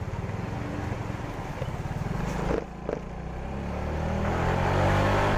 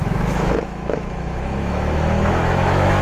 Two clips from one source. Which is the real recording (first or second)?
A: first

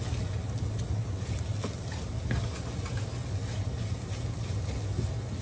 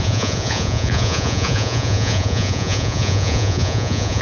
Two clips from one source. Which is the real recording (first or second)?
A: first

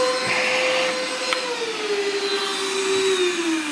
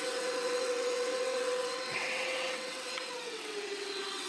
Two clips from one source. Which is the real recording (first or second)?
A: first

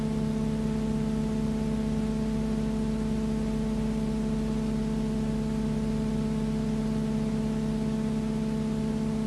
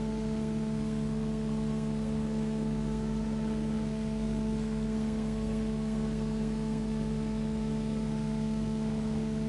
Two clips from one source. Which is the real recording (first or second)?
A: first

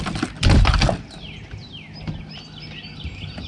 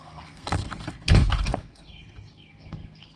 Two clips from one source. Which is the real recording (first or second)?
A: first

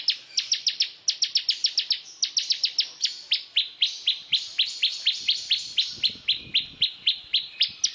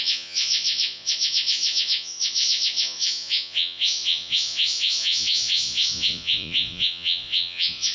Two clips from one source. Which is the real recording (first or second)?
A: first